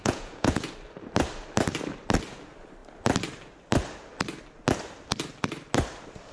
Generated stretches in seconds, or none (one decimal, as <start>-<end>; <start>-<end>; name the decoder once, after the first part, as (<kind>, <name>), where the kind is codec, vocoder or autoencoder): 0.0-0.7 (vocoder, Vocos)